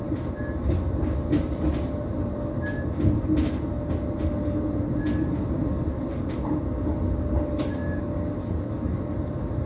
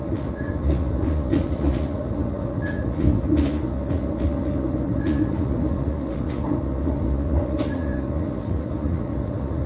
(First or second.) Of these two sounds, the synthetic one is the second